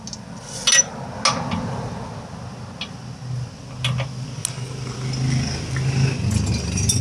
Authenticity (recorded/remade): recorded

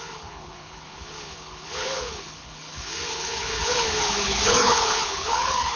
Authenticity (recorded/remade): remade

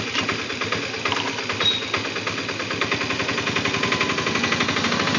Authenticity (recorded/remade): recorded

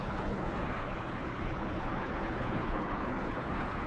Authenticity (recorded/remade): remade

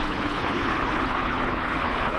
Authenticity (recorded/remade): remade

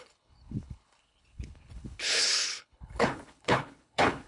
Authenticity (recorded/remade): remade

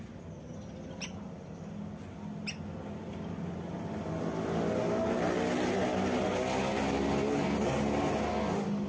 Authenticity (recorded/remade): recorded